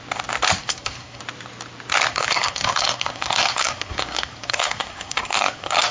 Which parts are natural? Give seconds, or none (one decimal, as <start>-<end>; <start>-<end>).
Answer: 0.0-0.6; 1.2-2.1